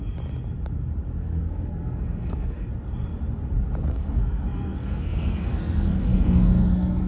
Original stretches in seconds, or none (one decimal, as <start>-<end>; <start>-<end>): 0.0-1.2; 2.7-3.9

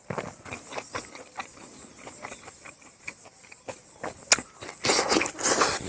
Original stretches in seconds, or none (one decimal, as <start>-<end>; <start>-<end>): 0.0-5.9

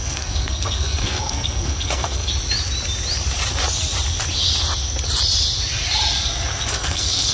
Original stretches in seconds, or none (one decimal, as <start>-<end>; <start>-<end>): 2.3-6.7